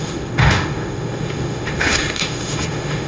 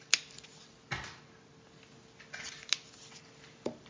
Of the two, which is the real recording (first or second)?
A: second